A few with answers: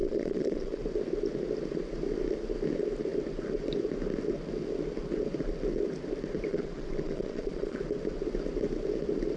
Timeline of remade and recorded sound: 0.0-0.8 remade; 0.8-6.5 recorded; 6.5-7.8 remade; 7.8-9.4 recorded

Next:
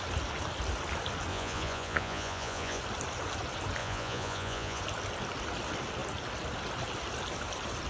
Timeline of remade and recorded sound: 0.0-1.3 recorded; 1.3-2.8 remade; 2.8-3.8 recorded; 3.8-4.8 remade; 4.8-7.9 recorded

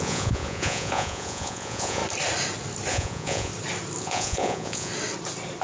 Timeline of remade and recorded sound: 0.0-2.0 remade; 2.0-2.9 recorded; 2.9-3.5 remade; 3.5-4.0 recorded; 4.0-4.9 remade; 4.9-5.6 recorded